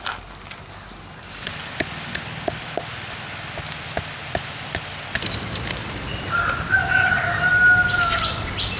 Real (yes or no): yes